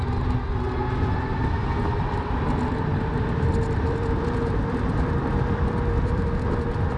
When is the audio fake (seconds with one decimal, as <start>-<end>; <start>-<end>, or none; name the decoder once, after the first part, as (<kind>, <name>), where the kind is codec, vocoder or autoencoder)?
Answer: 1.6-5.8 (vocoder, BigVGAN v2)